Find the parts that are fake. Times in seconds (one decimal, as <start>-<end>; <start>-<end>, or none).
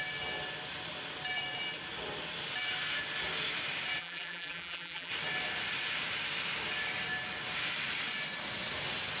4.0-5.1